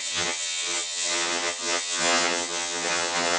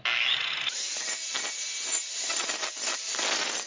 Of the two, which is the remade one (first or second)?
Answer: first